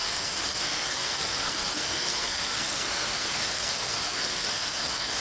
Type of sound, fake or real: fake